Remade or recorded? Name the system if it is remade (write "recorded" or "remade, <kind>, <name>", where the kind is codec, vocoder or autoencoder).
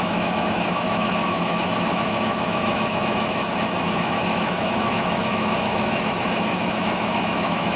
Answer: remade, autoencoder, DAC-VAE